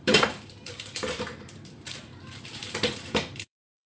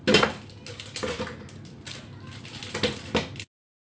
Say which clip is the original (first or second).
second